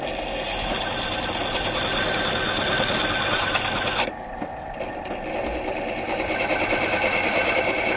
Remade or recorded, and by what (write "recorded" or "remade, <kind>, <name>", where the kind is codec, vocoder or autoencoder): recorded